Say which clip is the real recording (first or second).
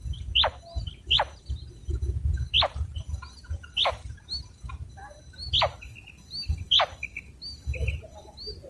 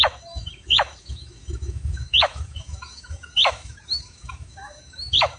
first